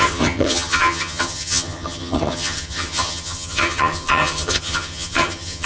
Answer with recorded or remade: remade